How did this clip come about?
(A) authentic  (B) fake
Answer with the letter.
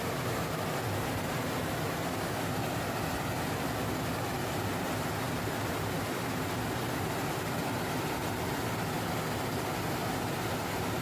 A